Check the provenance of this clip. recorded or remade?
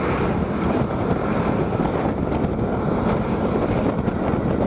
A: recorded